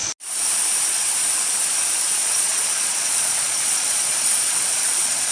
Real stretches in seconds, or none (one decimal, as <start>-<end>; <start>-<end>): 0.0-2.2